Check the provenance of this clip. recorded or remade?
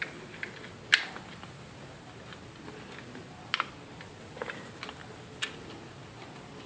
recorded